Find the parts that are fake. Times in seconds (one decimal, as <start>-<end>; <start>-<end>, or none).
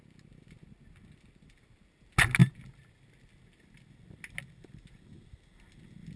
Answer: none